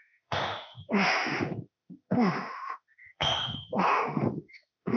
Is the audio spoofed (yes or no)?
yes